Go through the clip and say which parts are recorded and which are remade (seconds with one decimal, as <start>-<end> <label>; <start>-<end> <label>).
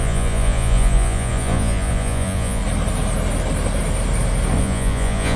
0.0-2.6 remade; 2.6-4.6 recorded; 4.6-5.4 remade